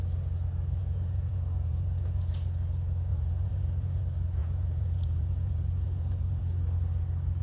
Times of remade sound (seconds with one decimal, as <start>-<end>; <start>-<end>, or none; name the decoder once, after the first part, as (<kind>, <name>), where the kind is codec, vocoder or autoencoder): 0.8-2.3 (vocoder, Vocos); 3.1-4.0; 4.4-6.4